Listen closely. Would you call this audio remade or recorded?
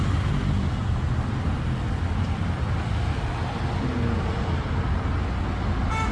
recorded